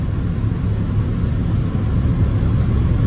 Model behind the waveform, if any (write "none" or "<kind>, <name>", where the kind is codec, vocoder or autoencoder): none